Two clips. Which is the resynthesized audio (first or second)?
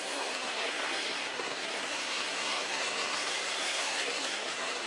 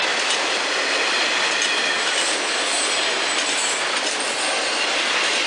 first